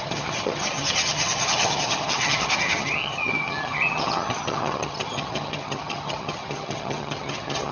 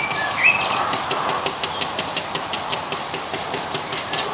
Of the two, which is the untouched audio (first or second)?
second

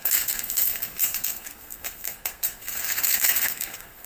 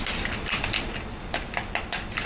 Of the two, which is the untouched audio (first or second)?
second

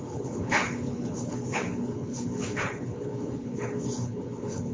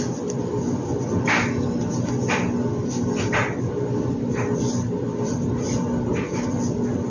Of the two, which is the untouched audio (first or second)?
second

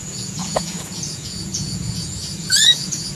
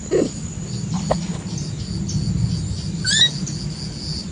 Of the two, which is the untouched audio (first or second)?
second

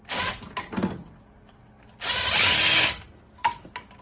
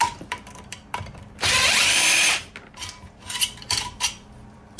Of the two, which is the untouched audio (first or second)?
first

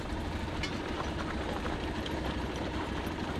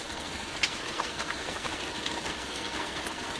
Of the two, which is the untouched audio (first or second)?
first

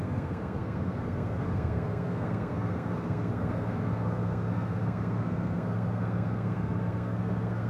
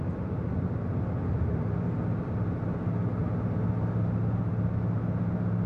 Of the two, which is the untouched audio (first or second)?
second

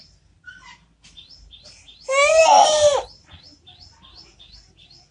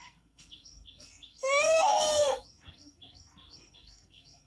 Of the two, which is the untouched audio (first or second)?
first